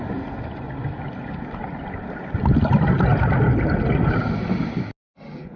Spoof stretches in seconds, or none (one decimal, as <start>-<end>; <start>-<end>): none